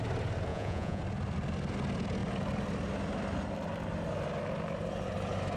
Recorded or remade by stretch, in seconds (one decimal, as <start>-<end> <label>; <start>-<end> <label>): 0.0-0.5 recorded; 0.5-1.0 remade; 1.0-5.6 recorded